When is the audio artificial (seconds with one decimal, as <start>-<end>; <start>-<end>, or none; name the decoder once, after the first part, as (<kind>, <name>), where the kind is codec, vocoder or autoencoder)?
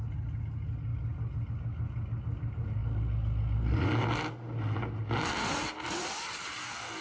none